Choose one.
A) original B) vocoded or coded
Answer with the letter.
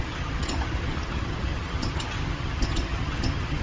B